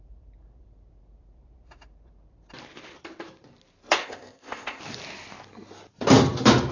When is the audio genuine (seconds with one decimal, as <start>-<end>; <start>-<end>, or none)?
0.0-4.0; 4.8-6.7